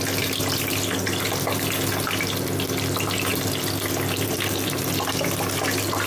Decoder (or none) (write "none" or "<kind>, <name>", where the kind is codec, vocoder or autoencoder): none